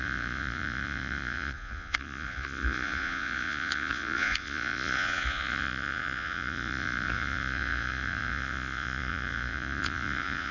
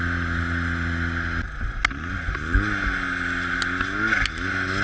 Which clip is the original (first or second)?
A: second